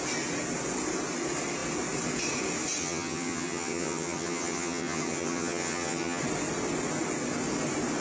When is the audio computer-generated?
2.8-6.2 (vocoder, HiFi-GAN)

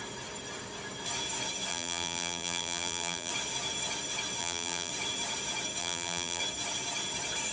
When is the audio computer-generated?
1.7-3.3 (vocoder, BigVGAN v2); 4.4-4.9; 5.8-6.4

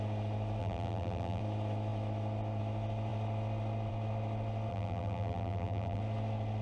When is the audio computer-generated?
0.6-1.4 (vocoder, BigVGAN v2); 4.7-6.0

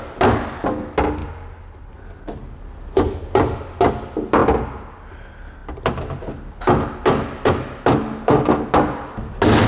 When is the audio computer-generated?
none

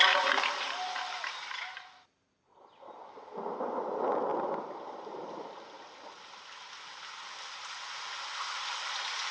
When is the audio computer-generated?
none